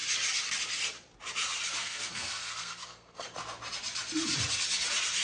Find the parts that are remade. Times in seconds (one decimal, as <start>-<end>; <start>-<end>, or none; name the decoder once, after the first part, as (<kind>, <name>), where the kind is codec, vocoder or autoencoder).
1.8-3.3 (codec, SNAC)